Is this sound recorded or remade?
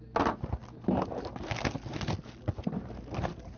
recorded